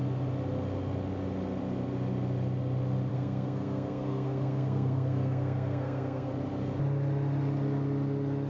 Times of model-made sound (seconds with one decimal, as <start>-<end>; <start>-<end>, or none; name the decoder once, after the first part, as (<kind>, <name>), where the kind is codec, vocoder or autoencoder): 3.1-6.3 (codec, SNAC)